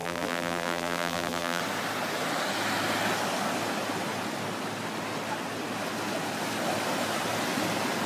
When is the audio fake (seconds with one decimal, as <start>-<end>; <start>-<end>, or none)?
0.0-1.6